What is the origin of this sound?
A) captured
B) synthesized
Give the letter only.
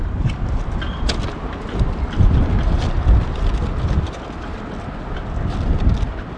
A